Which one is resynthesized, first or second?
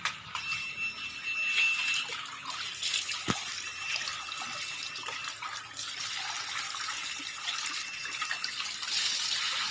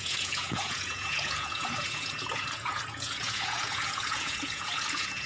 second